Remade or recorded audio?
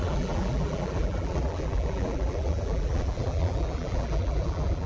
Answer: remade